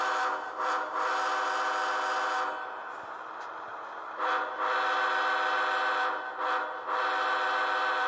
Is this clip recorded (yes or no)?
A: yes